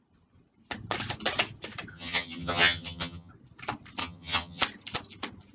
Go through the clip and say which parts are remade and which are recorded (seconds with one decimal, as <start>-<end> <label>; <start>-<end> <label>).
0.0-1.9 recorded; 1.9-3.3 remade; 3.3-4.0 recorded; 4.0-4.6 remade; 4.6-5.5 recorded